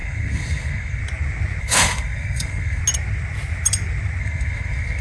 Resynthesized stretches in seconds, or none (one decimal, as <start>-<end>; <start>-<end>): 0.0-1.0; 1.6-2.8; 4.2-5.0